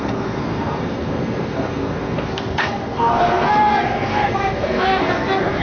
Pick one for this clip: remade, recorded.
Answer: remade